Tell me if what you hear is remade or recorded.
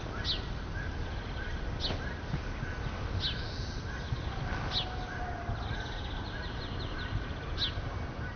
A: recorded